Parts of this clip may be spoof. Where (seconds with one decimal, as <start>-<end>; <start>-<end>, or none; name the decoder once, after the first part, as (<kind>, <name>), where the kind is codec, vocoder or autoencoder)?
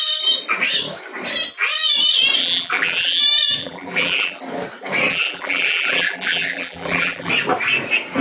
2.4-3.2 (vocoder, BigVGAN v2); 3.6-4.4; 5.1-7.3